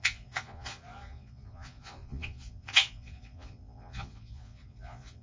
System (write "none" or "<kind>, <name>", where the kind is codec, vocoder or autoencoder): vocoder, Vocos